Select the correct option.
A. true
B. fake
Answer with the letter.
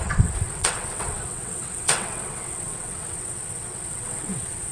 B